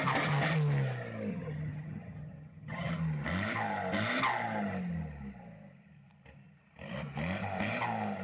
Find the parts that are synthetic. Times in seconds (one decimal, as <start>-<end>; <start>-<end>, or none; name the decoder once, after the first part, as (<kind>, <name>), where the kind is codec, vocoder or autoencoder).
1.3-2.9 (vocoder, HiFi-GAN)

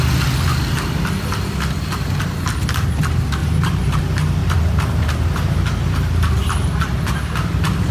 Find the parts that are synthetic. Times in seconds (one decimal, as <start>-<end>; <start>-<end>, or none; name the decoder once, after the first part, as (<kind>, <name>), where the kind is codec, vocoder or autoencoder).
3.4-4.0 (vocoder, BigVGAN v2); 4.4-7.0

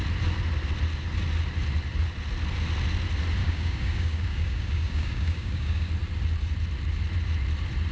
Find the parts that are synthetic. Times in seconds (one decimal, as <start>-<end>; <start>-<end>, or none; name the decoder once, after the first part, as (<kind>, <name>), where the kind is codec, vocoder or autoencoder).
3.4-5.9 (codec, DAC)

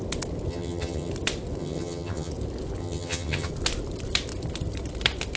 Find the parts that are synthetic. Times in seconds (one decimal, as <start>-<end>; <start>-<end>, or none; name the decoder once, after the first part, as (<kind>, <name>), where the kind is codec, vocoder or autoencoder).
0.5-1.1 (vocoder, HiFi-GAN); 1.6-2.3; 2.8-3.5

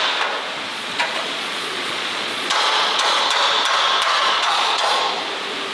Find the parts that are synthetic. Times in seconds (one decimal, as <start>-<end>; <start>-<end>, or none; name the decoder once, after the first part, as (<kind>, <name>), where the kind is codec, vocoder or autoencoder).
0.7-3.2 (vocoder, Vocos); 4.2-5.0